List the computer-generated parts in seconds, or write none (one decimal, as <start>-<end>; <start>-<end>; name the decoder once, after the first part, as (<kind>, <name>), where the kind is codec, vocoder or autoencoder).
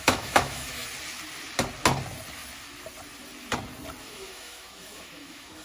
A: 0.0-0.8 (autoencoder, DAC-VAE); 4.0-5.6